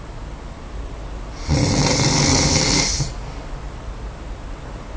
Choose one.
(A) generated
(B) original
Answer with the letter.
B